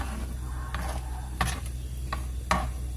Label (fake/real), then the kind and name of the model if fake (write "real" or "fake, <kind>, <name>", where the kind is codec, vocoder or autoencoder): real